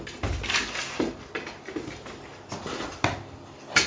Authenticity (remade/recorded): recorded